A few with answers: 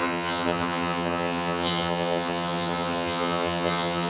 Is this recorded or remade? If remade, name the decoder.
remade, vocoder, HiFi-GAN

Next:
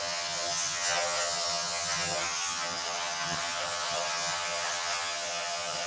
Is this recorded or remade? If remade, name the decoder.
remade, vocoder, HiFi-GAN